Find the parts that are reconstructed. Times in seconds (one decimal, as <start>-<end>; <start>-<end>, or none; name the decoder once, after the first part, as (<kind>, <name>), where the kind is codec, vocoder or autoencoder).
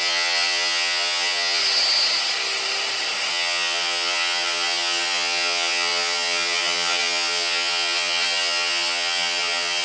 0.0-1.6 (vocoder, HiFi-GAN); 3.3-9.8